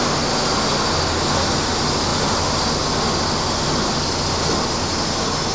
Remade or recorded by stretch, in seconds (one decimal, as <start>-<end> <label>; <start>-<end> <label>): 0.0-5.5 recorded